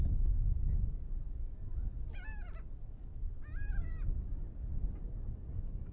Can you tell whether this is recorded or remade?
recorded